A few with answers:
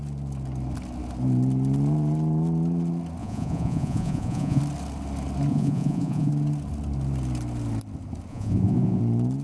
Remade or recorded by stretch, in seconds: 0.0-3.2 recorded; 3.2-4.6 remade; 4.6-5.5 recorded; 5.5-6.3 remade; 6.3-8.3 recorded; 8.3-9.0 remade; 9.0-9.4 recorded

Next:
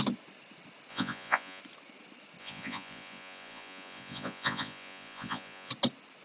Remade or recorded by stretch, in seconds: 0.0-0.9 recorded; 0.9-1.6 remade; 1.6-2.4 recorded; 2.4-5.7 remade; 5.7-6.2 recorded

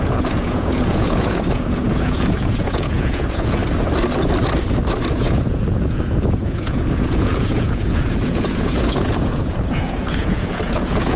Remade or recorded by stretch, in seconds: 0.0-3.6 remade; 3.6-5.1 recorded; 5.1-11.2 remade

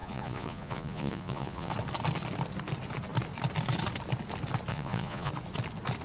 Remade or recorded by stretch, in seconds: 0.0-1.7 remade; 1.7-4.7 recorded; 4.7-5.3 remade; 5.3-6.0 recorded